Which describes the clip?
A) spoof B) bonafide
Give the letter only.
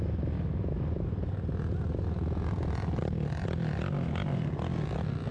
B